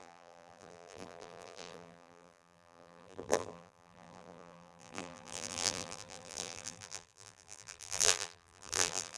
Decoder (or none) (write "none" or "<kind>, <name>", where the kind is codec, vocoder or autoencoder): vocoder, BigVGAN v2